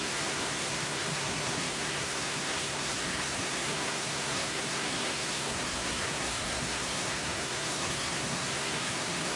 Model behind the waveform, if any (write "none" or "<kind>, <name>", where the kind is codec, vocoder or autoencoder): codec, SNAC